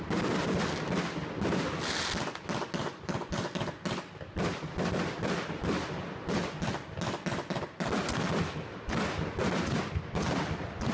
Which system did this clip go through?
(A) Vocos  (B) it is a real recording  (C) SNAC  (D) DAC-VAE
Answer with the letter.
B